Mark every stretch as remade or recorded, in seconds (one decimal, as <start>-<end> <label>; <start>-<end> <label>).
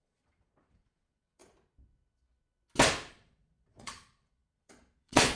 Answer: 0.0-1.4 remade; 1.4-3.1 recorded; 3.1-5.4 remade